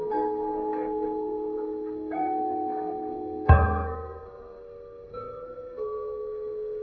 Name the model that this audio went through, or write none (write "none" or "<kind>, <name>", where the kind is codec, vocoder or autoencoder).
codec, SNAC